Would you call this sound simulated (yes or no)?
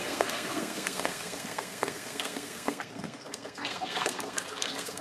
yes